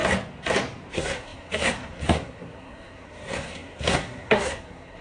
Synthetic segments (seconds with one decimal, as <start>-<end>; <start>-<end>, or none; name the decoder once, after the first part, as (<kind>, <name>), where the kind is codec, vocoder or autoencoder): 0.9-5.0 (codec, SNAC)